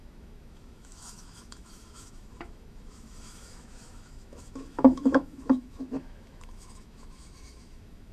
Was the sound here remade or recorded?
remade